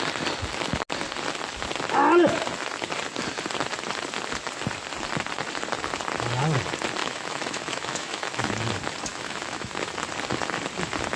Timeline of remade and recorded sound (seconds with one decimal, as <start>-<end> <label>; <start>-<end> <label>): 0.0-7.0 recorded; 7.0-8.5 remade; 8.5-9.1 recorded; 9.1-9.7 remade; 9.7-11.2 recorded